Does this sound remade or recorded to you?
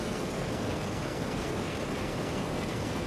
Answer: remade